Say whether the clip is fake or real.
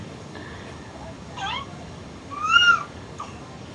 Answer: fake